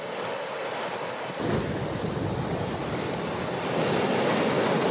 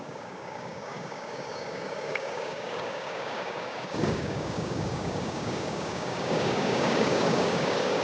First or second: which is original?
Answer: first